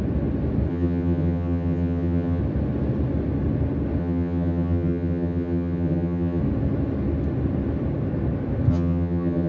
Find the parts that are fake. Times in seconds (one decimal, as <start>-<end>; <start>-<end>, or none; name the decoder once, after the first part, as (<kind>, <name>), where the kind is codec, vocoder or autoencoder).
0.7-2.4 (vocoder, HiFi-GAN); 4.0-6.4; 8.7-9.5